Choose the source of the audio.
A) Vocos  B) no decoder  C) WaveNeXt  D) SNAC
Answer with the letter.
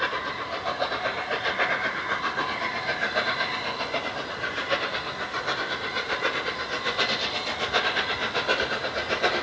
B